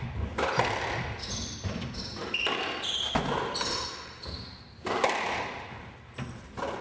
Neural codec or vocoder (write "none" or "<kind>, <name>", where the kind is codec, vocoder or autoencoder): none